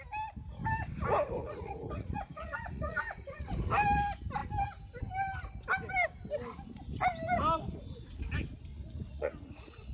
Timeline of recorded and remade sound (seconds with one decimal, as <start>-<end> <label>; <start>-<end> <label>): 0.0-1.4 recorded; 1.4-3.5 remade; 3.5-8.7 recorded; 8.7-9.9 remade